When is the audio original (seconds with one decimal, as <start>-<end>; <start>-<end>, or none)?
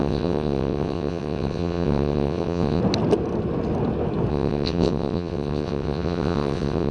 2.8-4.3